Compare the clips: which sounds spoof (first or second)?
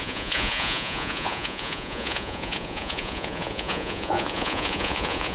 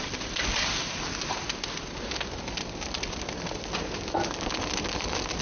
first